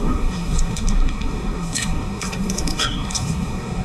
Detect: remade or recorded remade